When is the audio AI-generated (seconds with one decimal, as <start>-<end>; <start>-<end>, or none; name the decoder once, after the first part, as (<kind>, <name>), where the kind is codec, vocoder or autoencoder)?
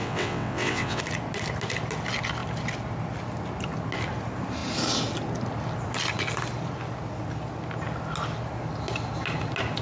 0.0-1.0 (vocoder, WaveNeXt)